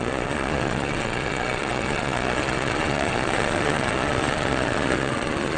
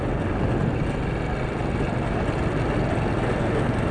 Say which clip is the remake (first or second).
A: first